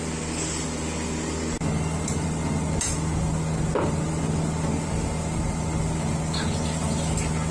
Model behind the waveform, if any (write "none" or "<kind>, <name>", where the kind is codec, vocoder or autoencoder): none